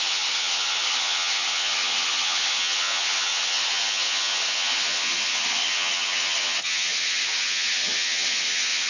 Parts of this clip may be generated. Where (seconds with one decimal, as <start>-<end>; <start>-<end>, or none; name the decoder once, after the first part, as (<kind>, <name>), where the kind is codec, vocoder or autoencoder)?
0.0-8.9 (vocoder, HiFi-GAN)